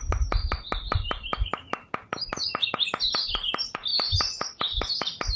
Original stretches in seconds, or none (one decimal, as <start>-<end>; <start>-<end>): 0.0-5.4

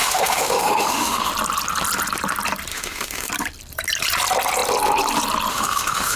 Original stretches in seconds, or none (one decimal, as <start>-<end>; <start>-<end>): 1.3-2.7; 3.3-5.5

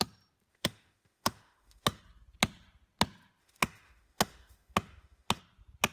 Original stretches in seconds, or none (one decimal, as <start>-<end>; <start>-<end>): 0.0-0.5; 2.0-3.4; 5.4-5.9

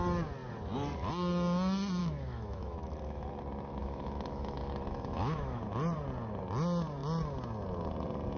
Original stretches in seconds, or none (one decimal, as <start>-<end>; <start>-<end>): 0.0-2.0; 3.4-3.8; 5.6-8.4

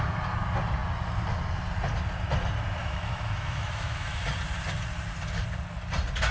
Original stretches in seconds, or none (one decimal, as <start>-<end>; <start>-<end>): 0.0-2.8; 4.3-6.3